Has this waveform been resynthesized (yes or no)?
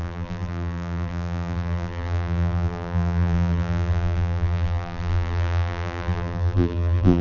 yes